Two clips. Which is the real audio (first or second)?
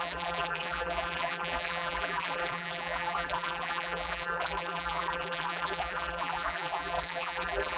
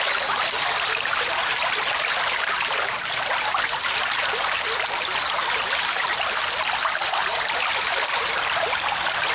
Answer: second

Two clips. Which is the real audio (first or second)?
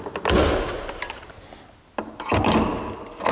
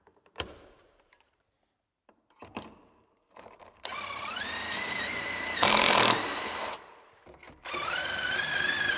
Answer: first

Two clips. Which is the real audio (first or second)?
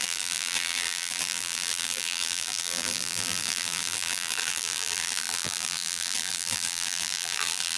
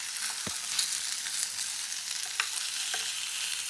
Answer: second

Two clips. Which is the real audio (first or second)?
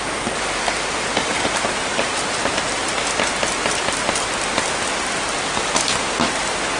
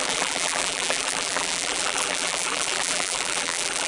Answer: first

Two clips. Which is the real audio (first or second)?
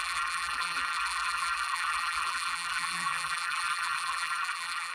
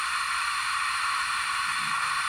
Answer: second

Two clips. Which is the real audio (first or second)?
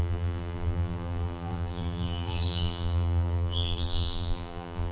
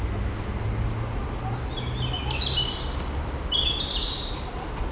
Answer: second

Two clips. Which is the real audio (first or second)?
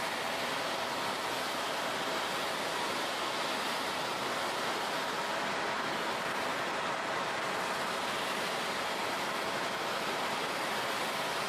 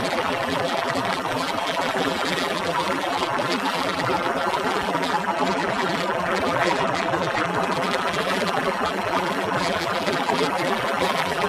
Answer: first